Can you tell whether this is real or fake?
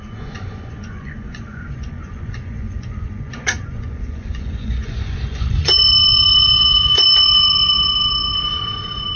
fake